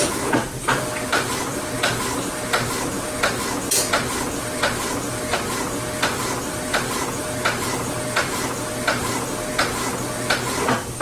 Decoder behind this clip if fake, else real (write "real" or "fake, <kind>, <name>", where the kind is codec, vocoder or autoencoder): real